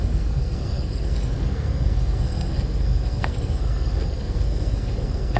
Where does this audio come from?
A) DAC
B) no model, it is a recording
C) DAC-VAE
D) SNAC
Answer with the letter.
D